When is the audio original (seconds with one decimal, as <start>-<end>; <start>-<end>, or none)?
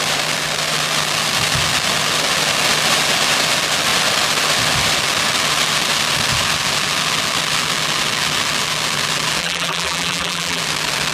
0.0-9.4; 10.6-11.1